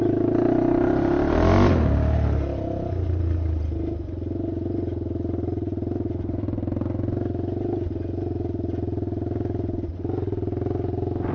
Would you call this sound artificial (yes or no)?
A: no